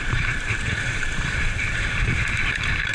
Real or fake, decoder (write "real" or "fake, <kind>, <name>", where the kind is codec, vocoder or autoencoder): fake, vocoder, BigVGAN v2